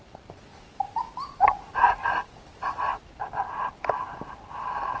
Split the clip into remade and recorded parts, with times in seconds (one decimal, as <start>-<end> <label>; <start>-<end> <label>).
0.0-5.0 recorded